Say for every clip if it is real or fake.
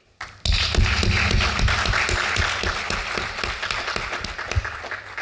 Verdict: real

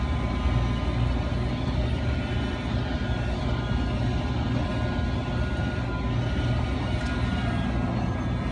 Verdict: real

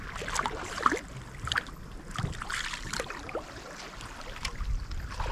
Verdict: real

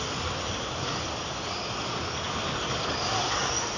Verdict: real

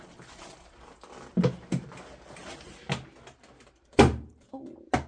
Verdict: real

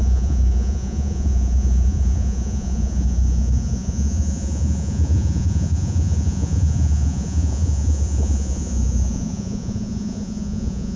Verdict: fake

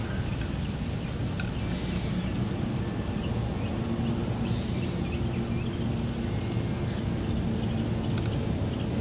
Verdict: real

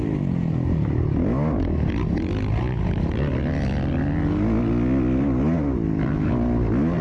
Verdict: real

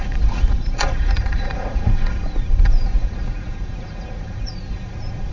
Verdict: fake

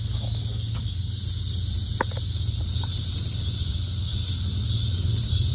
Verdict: real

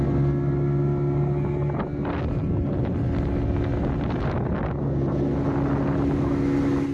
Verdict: real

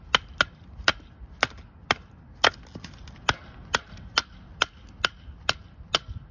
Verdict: real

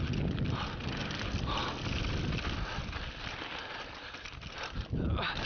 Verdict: real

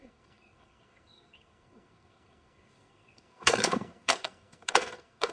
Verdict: fake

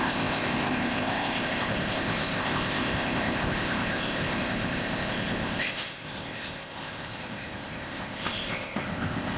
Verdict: fake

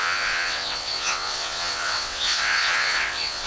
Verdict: fake